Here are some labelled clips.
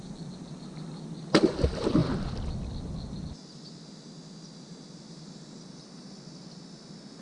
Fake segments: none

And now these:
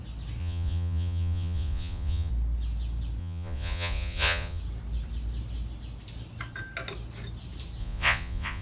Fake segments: 0.4-2.3 (vocoder, Vocos); 3.2-4.6; 7.8-8.6

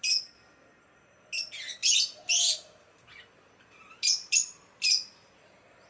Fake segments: 1.8-5.3 (vocoder, BigVGAN v2)